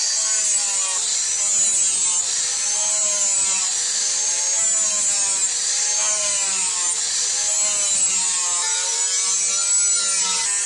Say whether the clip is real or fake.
real